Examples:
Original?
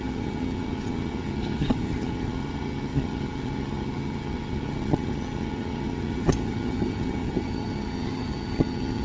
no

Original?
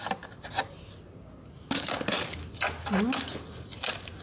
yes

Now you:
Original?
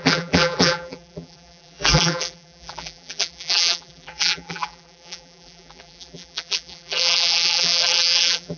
no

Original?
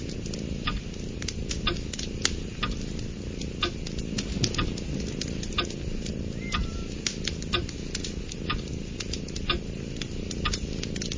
yes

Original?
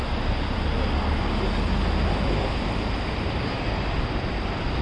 yes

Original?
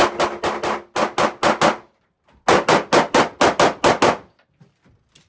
yes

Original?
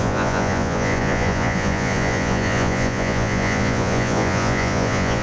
no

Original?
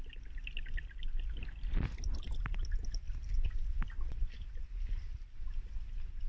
yes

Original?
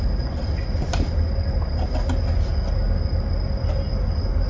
yes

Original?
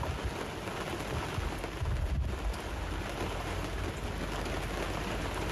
yes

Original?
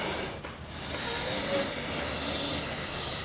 yes